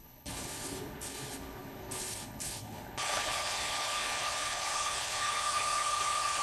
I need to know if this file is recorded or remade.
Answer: remade